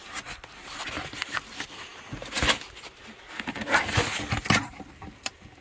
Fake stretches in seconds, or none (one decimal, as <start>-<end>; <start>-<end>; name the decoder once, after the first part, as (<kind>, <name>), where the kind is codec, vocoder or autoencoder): 0.0-1.9 (vocoder, BigVGAN v2); 4.4-5.6